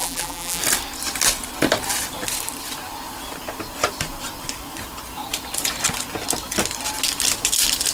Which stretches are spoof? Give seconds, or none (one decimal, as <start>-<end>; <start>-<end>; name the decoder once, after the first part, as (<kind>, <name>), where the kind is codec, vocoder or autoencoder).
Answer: 0.0-0.6 (vocoder, BigVGAN v2)